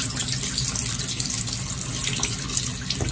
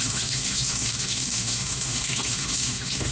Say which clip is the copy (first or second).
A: second